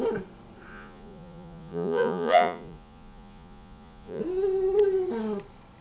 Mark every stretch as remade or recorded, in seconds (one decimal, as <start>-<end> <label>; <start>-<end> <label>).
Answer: 0.0-0.7 recorded; 0.7-4.2 remade; 4.2-5.8 recorded